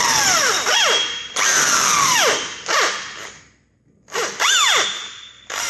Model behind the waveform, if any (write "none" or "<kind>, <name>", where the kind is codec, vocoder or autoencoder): none